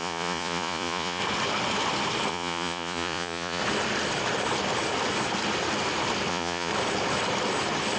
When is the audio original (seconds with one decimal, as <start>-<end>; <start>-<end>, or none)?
1.2-2.3; 3.6-6.3; 6.7-8.0